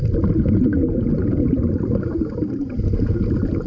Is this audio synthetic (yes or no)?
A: no